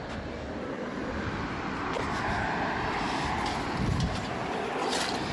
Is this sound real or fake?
real